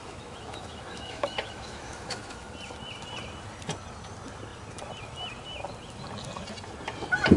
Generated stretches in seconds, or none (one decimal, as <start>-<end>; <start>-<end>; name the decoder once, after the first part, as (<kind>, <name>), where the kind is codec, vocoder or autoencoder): 0.0-2.5 (autoencoder, DAC-VAE)